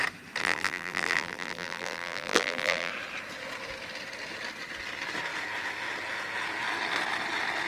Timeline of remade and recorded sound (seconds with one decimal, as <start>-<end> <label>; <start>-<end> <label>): 0.0-0.4 recorded; 0.4-2.9 remade; 2.9-7.7 recorded